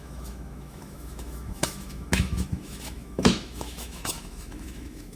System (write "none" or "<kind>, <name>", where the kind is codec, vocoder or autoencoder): autoencoder, DAC-VAE